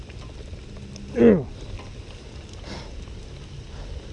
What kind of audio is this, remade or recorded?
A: recorded